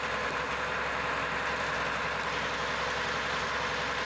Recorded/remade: recorded